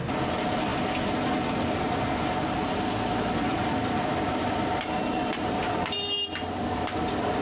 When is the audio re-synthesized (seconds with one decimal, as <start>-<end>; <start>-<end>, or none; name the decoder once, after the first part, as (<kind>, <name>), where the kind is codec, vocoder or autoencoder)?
none